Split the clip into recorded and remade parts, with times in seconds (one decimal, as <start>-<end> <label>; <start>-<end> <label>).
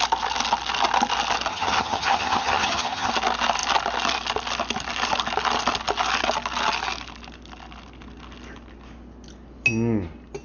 0.0-1.5 recorded; 1.5-3.1 remade; 3.1-10.4 recorded